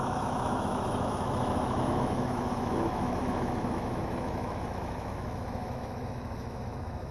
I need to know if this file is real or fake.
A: fake